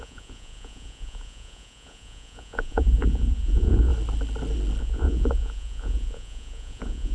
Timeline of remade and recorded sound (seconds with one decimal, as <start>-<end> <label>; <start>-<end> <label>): 0.0-3.9 remade; 3.9-4.8 recorded; 4.8-7.1 remade